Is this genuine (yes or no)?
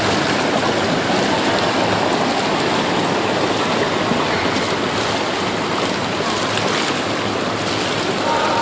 yes